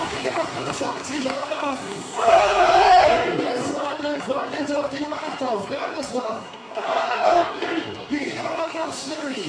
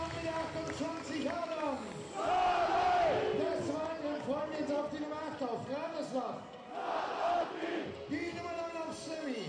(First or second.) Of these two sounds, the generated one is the first